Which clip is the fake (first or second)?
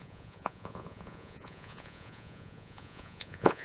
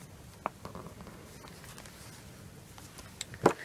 first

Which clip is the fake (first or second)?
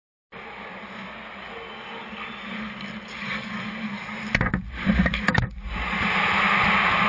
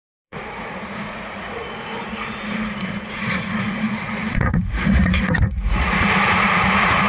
second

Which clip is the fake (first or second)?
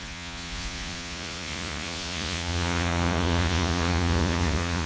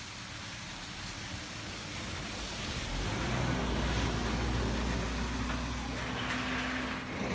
first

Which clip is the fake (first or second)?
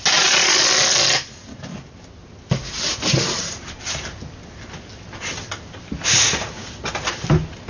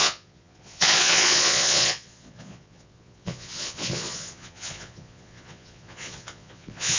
second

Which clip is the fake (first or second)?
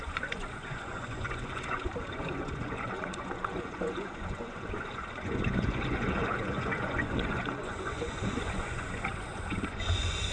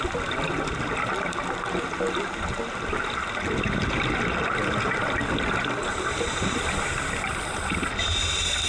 first